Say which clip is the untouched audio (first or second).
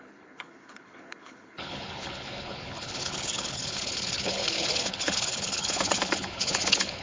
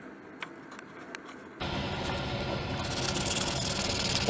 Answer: second